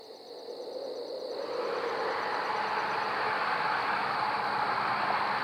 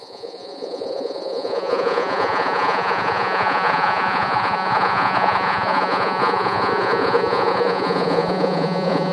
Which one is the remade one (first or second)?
second